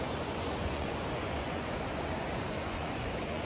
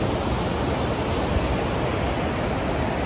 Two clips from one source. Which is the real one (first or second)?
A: second